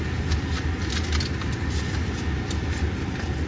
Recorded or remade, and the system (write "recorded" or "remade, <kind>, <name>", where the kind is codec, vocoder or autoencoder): recorded